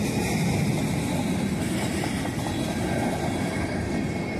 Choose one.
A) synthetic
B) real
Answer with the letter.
B